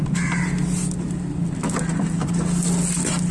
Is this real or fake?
real